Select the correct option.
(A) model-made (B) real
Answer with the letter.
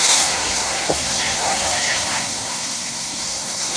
A